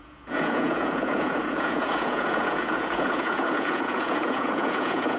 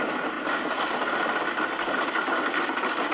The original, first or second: second